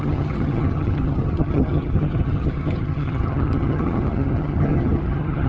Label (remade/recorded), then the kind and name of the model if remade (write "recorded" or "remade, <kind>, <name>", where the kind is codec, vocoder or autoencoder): remade, vocoder, HiFi-GAN